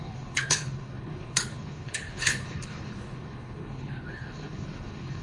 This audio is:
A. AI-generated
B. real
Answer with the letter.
A